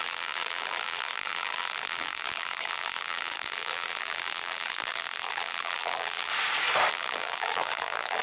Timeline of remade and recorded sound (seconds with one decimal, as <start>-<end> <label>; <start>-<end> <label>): 0.0-6.3 remade; 6.3-6.9 recorded; 6.9-8.2 remade